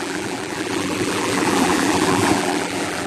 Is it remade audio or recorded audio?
remade